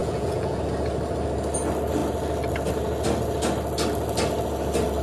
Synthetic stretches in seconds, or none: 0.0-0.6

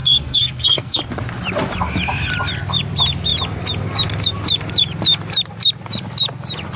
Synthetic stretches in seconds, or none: 0.0-1.0

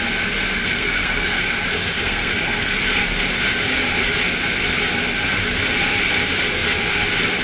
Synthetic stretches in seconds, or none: 0.6-1.4; 2.0-2.8

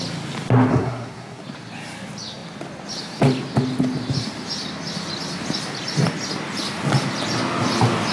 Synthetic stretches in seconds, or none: 0.7-1.4

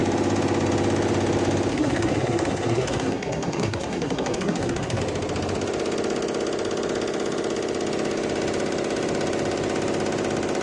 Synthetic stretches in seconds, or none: 1.7-5.0

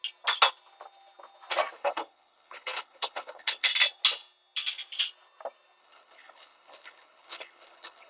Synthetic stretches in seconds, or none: 1.7-3.7; 5.8-8.1

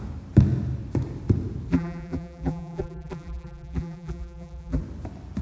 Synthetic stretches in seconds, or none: 1.7-4.8